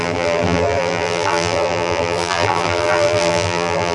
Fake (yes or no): yes